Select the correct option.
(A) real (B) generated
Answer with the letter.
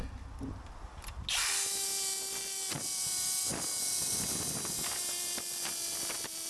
A